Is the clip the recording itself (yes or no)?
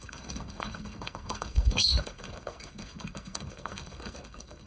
no